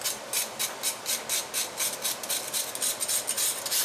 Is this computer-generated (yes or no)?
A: no